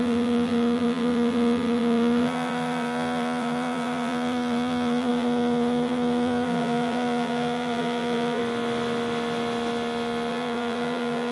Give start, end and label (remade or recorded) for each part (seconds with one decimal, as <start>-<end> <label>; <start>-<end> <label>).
0.0-8.4 remade; 8.4-10.3 recorded; 10.3-11.3 remade